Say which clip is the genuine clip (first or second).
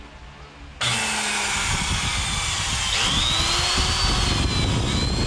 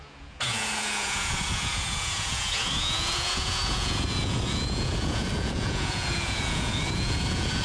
first